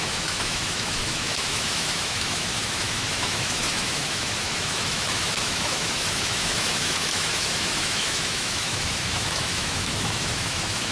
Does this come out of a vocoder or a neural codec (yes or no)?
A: yes